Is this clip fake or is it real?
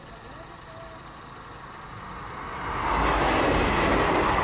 real